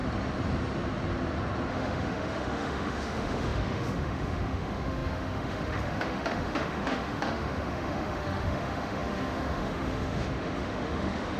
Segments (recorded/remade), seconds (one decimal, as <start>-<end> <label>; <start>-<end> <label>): 0.0-1.7 recorded; 1.7-11.4 remade